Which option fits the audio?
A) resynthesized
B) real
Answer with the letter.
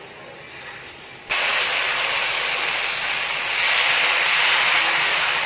B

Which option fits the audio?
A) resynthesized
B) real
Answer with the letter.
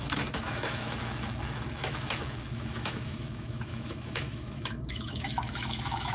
A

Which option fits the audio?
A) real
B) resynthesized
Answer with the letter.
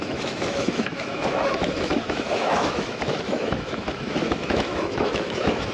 B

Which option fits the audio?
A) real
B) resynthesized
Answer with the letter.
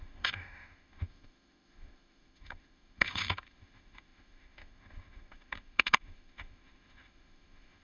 B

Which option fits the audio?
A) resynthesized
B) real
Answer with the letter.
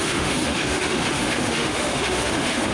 A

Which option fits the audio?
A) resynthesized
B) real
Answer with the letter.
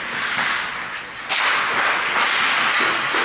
B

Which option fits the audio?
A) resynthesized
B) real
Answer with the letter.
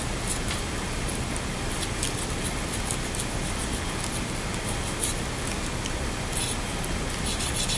B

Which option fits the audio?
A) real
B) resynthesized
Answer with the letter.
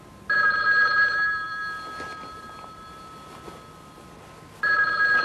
A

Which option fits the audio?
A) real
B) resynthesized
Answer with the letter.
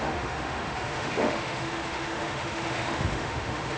B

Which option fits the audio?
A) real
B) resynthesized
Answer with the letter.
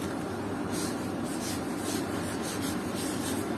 A